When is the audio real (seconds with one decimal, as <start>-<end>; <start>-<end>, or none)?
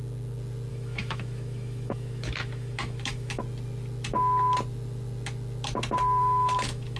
0.0-0.7; 3.4-6.2